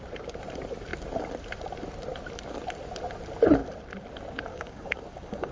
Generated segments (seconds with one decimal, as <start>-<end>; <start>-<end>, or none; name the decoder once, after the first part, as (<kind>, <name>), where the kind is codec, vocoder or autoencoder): 4.5-5.5 (codec, DAC)